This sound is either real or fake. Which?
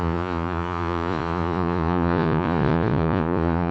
fake